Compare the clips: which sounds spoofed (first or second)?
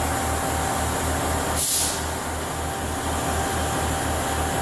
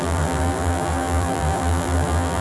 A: second